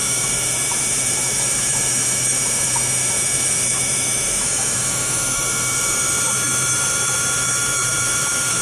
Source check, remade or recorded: remade